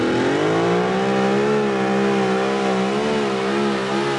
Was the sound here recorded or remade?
recorded